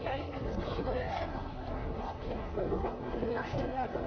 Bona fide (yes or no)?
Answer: no